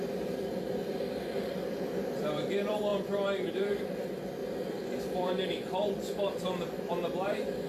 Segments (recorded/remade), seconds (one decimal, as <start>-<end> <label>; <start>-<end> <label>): 0.0-2.9 remade; 2.9-3.5 recorded; 3.5-4.4 remade; 4.4-5.0 recorded; 5.0-7.7 remade